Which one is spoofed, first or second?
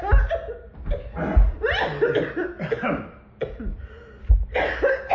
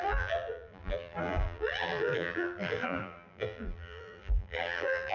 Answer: second